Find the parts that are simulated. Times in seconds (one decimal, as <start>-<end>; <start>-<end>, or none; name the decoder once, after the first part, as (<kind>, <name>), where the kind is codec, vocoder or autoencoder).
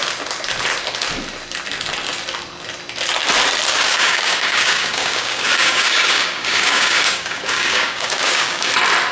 3.7-8.7 (codec, DAC)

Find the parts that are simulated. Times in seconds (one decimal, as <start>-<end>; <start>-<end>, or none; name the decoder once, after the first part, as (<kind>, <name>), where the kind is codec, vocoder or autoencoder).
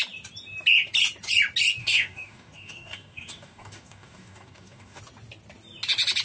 1.8-5.0 (codec, DAC)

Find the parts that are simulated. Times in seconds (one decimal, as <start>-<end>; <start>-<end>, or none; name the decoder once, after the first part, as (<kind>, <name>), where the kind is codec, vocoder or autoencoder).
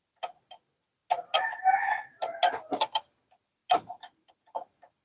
none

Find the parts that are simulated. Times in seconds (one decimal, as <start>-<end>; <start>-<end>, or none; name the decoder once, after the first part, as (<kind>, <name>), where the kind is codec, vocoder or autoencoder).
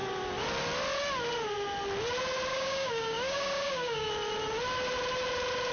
2.5-4.1 (codec, DAC)